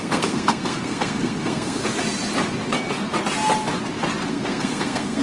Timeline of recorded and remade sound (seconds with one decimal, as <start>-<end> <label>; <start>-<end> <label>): 0.0-1.8 remade; 1.8-4.3 recorded; 4.3-5.2 remade